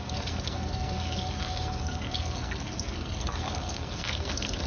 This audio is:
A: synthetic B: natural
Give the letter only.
A